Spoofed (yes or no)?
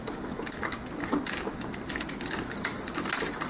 no